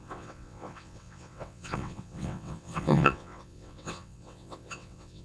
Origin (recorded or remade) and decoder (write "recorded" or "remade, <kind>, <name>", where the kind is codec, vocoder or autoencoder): remade, vocoder, WaveNeXt